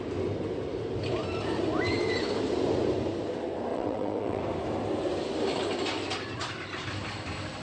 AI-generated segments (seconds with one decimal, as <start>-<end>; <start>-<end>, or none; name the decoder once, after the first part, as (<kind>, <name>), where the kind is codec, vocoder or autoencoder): 3.7-4.4 (vocoder, WaveNeXt)